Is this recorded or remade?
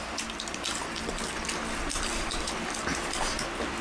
recorded